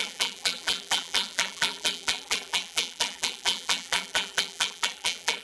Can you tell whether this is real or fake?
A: fake